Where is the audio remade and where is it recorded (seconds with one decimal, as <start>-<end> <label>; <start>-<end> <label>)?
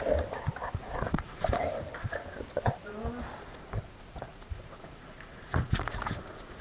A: 0.0-0.8 recorded; 0.8-1.6 remade; 1.6-3.4 recorded; 3.4-6.6 remade